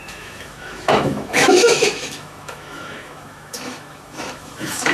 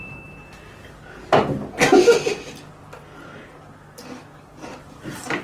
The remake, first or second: first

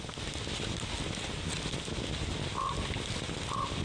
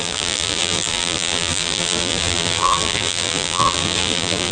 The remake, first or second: second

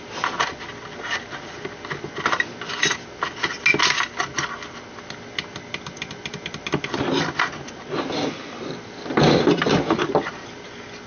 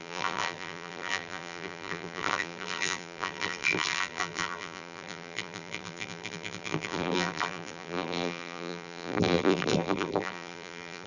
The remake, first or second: second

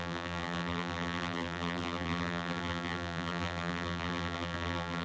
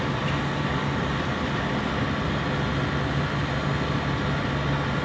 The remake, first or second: first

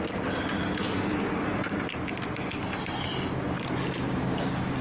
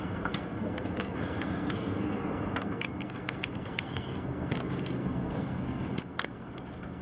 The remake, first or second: second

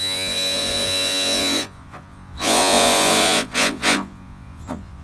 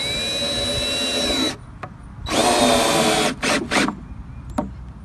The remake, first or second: first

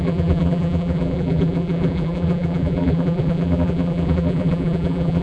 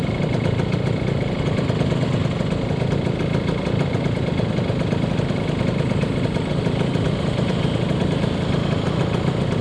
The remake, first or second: first